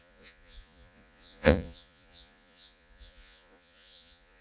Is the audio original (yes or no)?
no